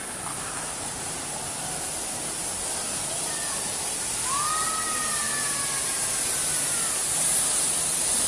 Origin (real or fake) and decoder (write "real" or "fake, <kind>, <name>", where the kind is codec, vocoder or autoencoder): real